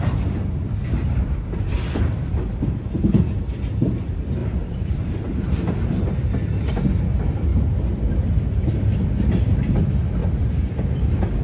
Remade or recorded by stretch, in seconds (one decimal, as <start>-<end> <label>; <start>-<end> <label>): 0.0-4.4 recorded; 4.4-6.0 remade; 6.0-10.2 recorded; 10.2-11.4 remade

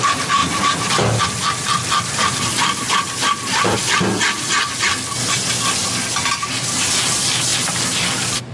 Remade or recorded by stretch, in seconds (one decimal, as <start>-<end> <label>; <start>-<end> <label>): 0.0-8.5 recorded